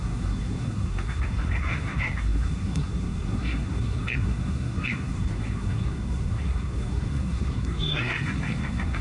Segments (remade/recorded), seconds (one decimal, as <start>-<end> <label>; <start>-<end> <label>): 0.0-9.0 remade